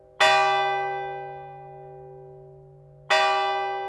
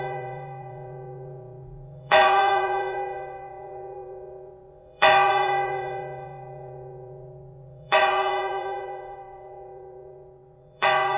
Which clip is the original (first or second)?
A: first